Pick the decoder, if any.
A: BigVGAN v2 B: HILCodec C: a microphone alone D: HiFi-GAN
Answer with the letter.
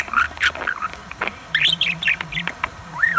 A